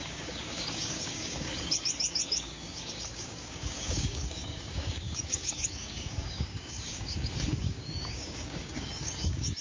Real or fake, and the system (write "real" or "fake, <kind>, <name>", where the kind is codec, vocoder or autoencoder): fake, codec, DAC